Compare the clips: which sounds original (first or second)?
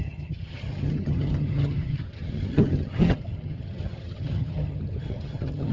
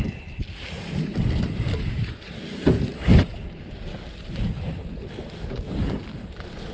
second